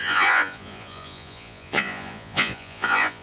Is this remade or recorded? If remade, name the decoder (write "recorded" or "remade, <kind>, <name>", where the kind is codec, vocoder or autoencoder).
remade, vocoder, Vocos